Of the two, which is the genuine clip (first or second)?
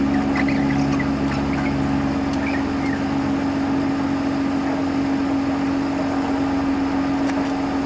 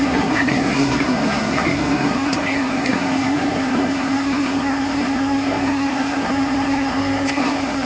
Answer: first